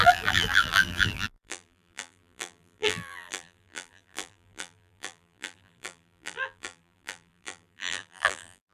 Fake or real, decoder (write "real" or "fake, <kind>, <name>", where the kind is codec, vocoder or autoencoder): fake, vocoder, BigVGAN v2